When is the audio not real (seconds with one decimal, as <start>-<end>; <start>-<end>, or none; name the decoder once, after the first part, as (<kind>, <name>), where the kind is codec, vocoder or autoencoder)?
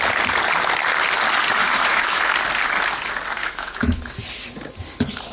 1.6-2.2 (autoencoder, DAC-VAE); 3.4-4.0